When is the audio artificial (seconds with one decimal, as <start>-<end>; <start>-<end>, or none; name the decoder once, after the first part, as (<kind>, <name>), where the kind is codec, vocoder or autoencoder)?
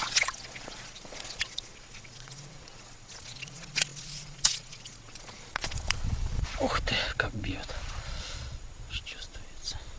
0.0-10.0 (vocoder, Vocos)